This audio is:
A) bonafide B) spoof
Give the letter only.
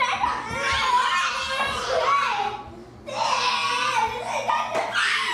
A